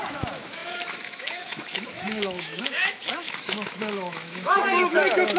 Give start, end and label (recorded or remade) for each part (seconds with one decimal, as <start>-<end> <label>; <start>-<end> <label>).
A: 0.0-5.4 remade